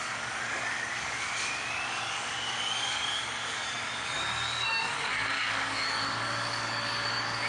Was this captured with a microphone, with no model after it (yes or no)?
no